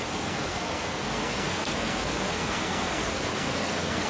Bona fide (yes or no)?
no